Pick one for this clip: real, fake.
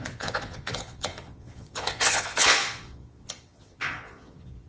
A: fake